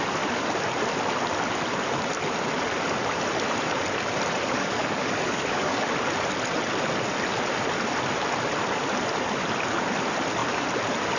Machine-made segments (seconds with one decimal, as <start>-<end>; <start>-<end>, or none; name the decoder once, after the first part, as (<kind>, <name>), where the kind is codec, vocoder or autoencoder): 4.4-5.9 (codec, DAC)